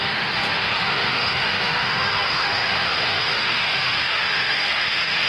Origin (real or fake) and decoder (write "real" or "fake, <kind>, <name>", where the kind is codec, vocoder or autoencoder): fake, autoencoder, DAC-VAE